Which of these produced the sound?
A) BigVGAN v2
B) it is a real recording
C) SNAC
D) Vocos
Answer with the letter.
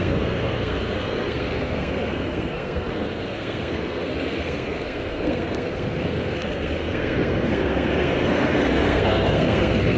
C